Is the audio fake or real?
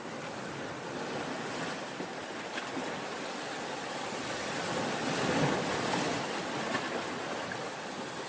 real